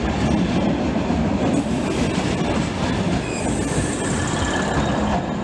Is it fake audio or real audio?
real